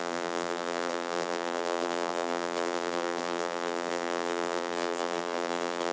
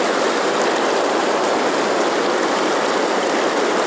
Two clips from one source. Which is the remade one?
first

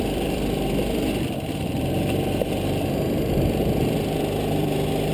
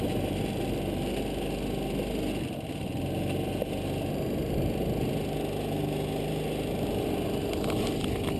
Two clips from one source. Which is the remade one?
first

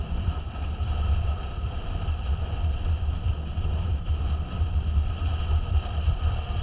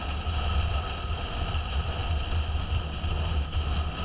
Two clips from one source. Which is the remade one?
first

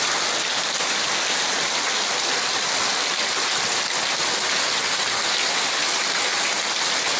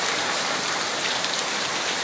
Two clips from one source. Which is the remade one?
second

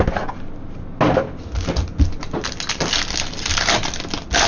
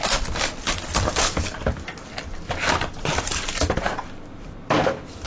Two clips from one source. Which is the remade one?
second